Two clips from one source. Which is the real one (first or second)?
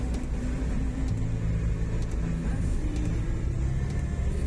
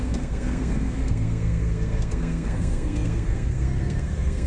first